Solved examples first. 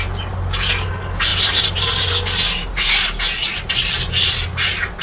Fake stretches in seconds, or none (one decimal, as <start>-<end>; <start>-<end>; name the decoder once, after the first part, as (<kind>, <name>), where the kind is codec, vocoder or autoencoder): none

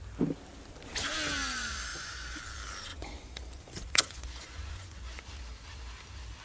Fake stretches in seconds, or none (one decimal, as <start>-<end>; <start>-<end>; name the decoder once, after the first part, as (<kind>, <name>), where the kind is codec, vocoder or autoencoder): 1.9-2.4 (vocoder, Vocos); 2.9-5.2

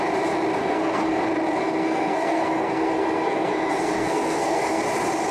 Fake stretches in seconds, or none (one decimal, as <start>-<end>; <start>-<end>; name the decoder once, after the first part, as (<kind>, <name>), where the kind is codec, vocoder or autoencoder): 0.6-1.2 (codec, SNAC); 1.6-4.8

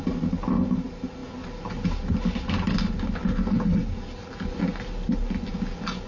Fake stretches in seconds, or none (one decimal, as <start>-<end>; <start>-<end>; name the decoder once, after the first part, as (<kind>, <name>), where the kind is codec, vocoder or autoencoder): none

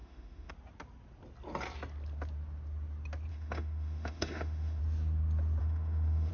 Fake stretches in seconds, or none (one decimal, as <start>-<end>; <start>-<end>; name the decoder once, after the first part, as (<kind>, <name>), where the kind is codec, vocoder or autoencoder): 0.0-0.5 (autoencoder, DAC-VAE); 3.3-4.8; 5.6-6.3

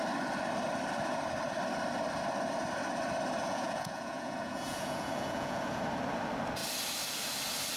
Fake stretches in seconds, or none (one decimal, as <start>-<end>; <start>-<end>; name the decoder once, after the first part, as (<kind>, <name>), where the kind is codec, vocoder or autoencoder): 3.4-5.8 (vocoder, Vocos)

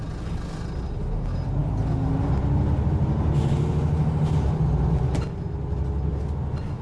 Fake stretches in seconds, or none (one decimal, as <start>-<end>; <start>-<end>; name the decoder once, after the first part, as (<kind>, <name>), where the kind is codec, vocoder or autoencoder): none